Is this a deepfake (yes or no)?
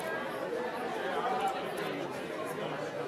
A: no